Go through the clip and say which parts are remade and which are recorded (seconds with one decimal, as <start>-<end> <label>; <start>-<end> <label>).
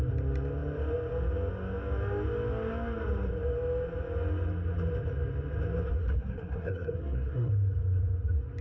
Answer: 0.0-6.0 recorded; 6.0-7.5 remade; 7.5-8.6 recorded